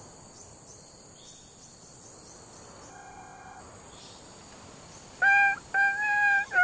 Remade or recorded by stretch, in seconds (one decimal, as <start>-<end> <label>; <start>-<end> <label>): 0.0-2.9 recorded; 2.9-3.6 remade; 3.6-6.6 recorded